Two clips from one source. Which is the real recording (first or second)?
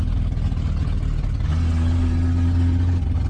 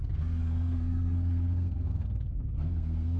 first